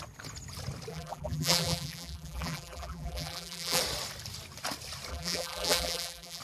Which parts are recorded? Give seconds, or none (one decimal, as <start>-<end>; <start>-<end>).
0.0-0.9; 3.8-5.1